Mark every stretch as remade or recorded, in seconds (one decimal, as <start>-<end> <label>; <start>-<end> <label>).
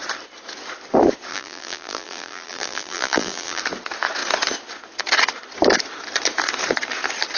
0.0-1.3 recorded; 1.3-3.6 remade; 3.6-7.4 recorded